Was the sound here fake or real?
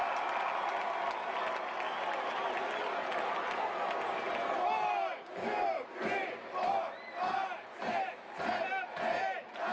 real